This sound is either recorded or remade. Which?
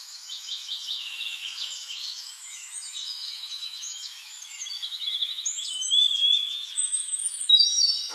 remade